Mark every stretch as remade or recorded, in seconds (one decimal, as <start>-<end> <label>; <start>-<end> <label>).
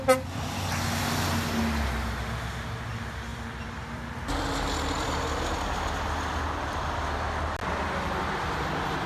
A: 0.0-3.3 recorded; 3.3-4.4 remade; 4.4-9.1 recorded